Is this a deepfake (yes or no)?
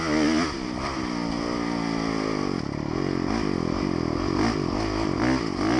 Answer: no